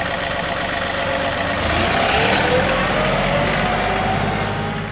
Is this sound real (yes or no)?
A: yes